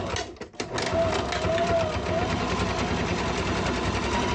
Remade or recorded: recorded